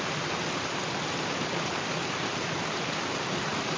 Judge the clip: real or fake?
real